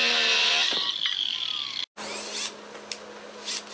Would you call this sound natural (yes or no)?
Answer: yes